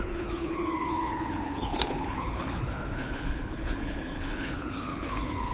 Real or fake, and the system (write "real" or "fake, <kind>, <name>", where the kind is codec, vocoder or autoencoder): fake, codec, HILCodec